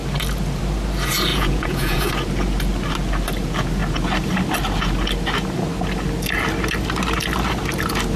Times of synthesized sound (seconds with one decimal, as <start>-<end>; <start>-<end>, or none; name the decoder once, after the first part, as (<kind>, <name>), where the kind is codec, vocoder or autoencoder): 1.3-2.1 (vocoder, Vocos)